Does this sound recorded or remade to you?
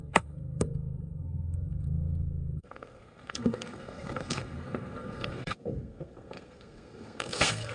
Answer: remade